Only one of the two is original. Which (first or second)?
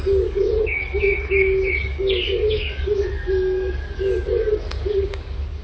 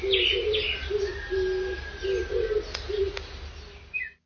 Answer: second